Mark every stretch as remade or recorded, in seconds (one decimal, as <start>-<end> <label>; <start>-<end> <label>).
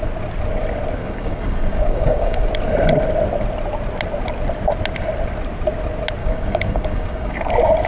0.0-1.0 recorded; 1.0-2.5 remade; 2.5-6.2 recorded; 6.2-7.5 remade; 7.5-7.9 recorded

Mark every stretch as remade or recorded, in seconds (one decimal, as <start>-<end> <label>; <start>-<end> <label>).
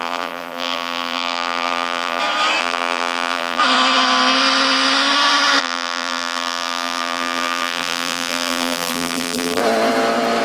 0.0-2.2 remade; 2.2-2.6 recorded; 2.6-3.6 remade; 3.6-5.6 recorded; 5.6-9.6 remade; 9.6-10.4 recorded